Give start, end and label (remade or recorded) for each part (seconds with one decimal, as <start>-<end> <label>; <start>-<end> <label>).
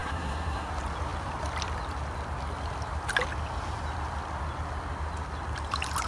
0.0-0.7 remade; 0.7-6.1 recorded